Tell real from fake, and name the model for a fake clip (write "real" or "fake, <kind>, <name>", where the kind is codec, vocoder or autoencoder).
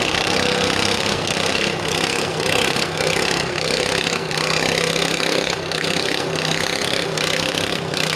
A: fake, codec, SNAC